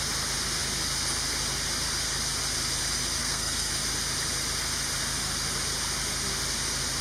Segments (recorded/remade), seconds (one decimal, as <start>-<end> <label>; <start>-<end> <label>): 0.0-3.2 recorded; 3.2-3.7 remade; 3.7-7.0 recorded

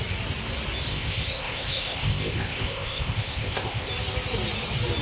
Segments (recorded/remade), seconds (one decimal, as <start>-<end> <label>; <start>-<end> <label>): 0.0-0.9 recorded; 0.9-3.9 remade; 3.9-5.0 recorded

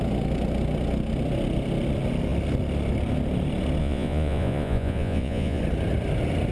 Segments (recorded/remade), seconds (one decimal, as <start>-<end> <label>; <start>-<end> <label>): 0.0-3.8 recorded; 3.8-5.6 remade; 5.6-6.5 recorded